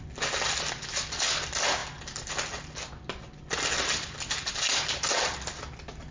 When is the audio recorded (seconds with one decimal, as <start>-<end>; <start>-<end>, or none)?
0.0-6.1